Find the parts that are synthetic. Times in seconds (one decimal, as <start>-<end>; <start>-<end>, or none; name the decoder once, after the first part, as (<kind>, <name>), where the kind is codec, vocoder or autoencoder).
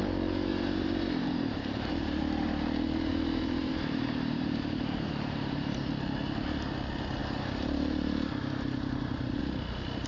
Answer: 0.5-2.2 (vocoder, BigVGAN v2); 3.1-5.9; 7.2-9.4